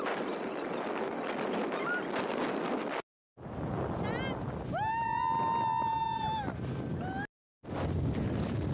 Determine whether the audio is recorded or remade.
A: recorded